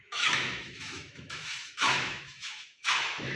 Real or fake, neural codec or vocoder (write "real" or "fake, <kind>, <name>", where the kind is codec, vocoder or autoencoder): fake, autoencoder, DAC-VAE